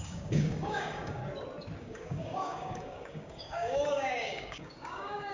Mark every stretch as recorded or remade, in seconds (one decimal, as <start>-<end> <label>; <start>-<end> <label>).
0.0-1.2 remade; 1.2-1.8 recorded; 1.8-5.3 remade